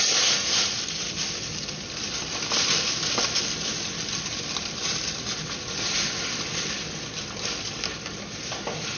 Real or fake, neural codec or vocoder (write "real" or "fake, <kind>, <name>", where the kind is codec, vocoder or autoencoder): real